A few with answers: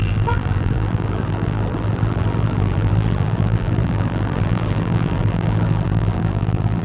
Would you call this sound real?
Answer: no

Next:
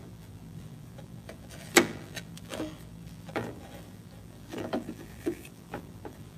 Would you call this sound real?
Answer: no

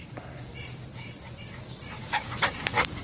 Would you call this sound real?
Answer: yes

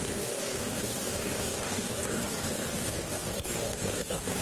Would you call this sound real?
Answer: no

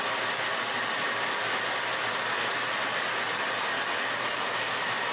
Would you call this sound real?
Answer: yes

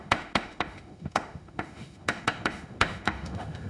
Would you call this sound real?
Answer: no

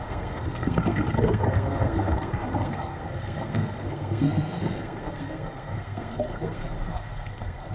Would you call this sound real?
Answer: no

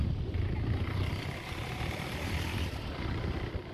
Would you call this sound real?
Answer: yes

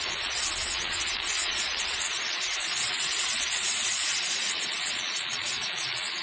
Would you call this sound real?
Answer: no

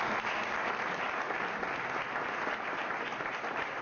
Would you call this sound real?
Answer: yes